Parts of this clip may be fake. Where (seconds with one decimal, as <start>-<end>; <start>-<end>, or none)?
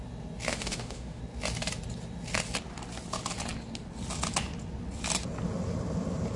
0.5-1.2